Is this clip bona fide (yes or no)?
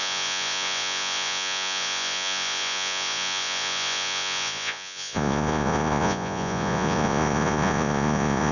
no